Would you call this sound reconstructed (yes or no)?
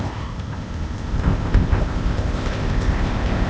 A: yes